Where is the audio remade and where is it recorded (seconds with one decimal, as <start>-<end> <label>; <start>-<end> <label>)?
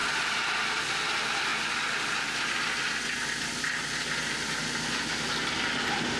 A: 0.0-6.2 recorded